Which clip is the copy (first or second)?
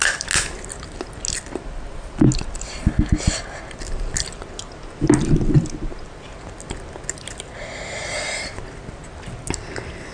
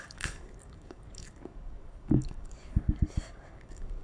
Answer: second